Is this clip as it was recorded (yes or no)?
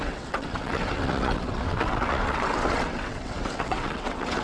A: no